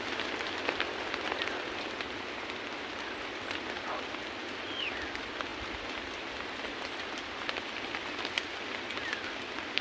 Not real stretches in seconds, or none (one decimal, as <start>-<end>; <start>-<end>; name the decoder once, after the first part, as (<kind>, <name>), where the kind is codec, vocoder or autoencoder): none